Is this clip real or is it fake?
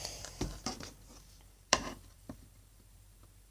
fake